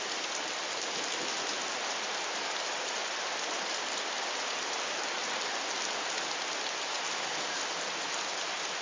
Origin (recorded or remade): recorded